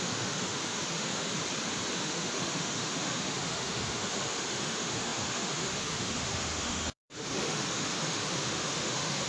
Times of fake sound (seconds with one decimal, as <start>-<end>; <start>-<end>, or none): 0.0-1.3; 1.9-9.3

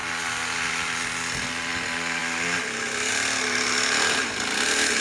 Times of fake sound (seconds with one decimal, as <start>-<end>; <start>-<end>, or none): none

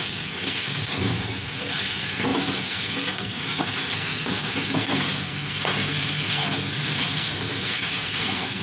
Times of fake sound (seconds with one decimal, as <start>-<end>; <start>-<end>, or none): 0.0-8.6

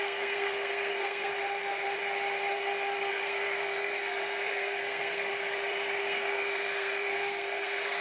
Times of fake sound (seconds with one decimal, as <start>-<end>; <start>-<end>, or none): 0.0-1.3; 3.1-5.3; 6.0-8.0

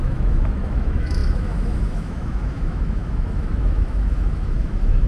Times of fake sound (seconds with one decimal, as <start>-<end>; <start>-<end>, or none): 0.0-5.1